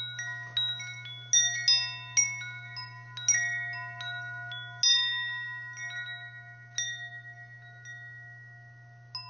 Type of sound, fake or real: real